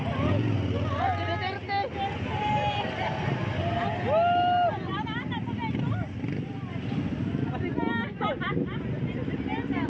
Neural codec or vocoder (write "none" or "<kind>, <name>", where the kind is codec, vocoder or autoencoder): none